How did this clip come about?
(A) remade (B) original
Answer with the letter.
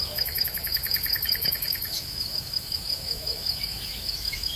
A